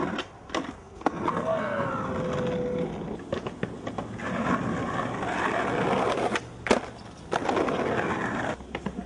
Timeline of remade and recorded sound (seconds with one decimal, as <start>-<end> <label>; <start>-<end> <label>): 0.0-0.8 recorded; 0.8-1.9 remade; 1.9-9.1 recorded